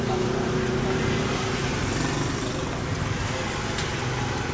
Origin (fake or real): real